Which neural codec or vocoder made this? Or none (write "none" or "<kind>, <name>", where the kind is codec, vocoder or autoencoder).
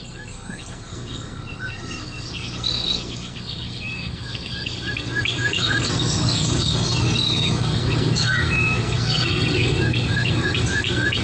codec, SNAC